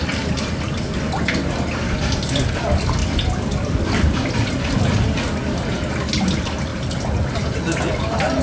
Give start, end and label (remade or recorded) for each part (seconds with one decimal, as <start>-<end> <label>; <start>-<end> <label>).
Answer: 0.0-3.0 recorded; 3.0-4.3 remade; 4.3-6.7 recorded; 6.7-8.4 remade